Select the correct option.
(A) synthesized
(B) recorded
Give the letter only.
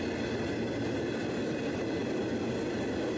B